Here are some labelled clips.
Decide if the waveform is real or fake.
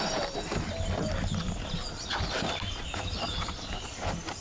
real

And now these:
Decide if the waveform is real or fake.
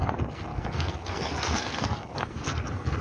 fake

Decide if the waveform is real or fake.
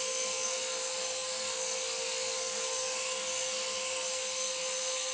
fake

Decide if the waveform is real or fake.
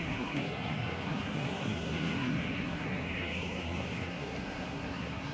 fake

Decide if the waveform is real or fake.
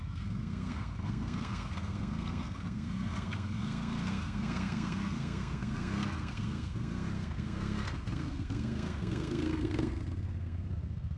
fake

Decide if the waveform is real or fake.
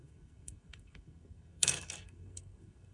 fake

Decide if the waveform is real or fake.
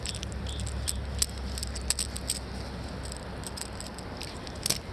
real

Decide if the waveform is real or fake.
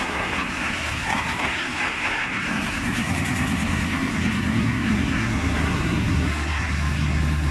fake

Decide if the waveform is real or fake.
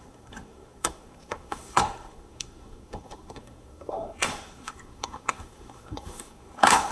fake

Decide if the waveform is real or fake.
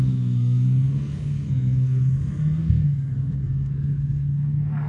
fake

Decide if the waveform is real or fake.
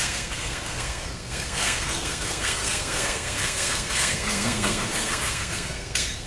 fake